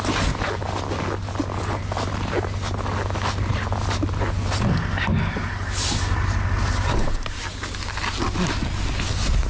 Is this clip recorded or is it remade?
recorded